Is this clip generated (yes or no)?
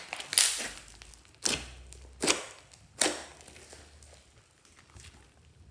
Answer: no